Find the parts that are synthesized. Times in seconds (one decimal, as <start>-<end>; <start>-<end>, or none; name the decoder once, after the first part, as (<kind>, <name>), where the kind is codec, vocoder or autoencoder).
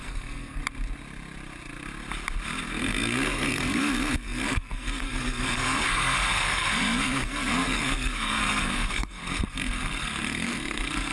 0.0-0.6 (codec, SNAC); 2.7-11.1